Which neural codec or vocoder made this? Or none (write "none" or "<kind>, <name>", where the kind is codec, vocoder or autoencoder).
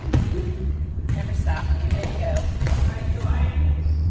vocoder, WaveNeXt